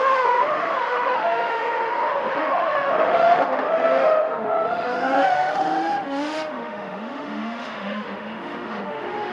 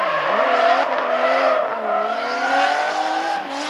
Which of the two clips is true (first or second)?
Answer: second